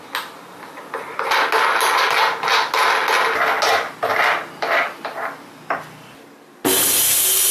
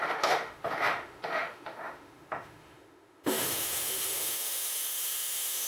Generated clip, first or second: second